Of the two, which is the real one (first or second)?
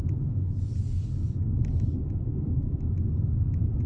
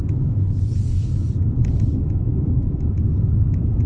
first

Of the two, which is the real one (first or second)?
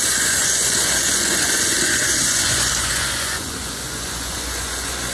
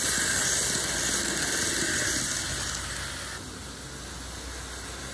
second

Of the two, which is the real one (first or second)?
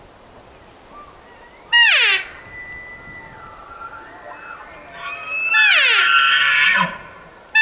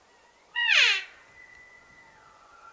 first